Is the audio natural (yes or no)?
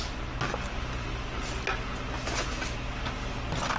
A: yes